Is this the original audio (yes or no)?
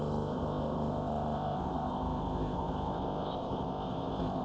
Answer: no